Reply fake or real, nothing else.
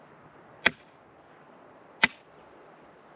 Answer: real